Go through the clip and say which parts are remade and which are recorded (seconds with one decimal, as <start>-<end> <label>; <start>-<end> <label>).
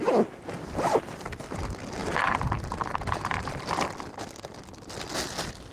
0.0-2.0 recorded; 2.0-3.8 remade; 3.8-5.7 recorded